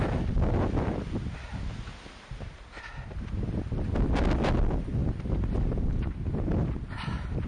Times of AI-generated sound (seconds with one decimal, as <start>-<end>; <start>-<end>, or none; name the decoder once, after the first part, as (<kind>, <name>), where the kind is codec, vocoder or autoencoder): none

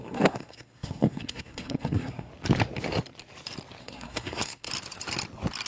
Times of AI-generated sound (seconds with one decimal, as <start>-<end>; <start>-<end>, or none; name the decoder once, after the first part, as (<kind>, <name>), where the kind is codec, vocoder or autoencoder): 0.0-2.3 (codec, SNAC); 3.8-4.7

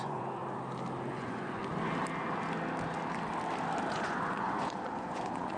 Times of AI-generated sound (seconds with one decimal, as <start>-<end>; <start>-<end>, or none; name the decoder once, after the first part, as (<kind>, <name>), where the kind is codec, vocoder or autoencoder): 0.0-0.4 (vocoder, Vocos); 1.1-1.6; 3.9-5.6

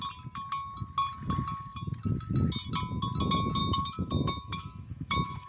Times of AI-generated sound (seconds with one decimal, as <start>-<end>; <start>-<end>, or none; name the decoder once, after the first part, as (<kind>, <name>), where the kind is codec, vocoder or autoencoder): 3.6-5.5 (autoencoder, DAC-VAE)

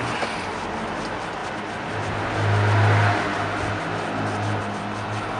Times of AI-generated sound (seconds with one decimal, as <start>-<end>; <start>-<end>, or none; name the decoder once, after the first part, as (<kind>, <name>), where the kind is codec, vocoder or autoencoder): none

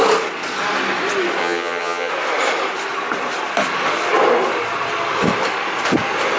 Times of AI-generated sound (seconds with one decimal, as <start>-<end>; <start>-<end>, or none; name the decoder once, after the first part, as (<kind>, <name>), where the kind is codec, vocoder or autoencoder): 1.4-2.1 (vocoder, HiFi-GAN)

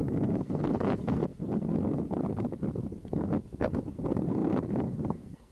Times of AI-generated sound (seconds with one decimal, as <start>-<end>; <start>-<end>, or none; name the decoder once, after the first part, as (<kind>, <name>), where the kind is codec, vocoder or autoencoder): 0.0-5.5 (codec, SNAC)

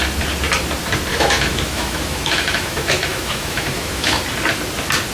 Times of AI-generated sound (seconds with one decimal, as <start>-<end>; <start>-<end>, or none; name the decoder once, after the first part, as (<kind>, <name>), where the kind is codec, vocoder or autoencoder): 1.1-4.2 (autoencoder, DAC-VAE)